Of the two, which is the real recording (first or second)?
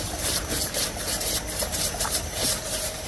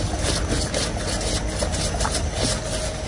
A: second